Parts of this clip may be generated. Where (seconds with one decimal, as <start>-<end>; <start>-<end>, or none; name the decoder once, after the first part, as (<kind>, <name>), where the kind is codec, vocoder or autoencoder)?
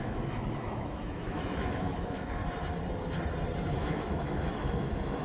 0.0-2.4 (autoencoder, DAC-VAE); 3.7-5.2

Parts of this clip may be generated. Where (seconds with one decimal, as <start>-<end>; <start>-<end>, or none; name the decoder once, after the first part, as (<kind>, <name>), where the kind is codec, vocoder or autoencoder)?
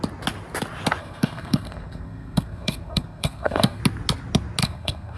1.0-3.8 (codec, SNAC); 4.6-5.2